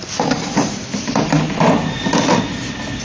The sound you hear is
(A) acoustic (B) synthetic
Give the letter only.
A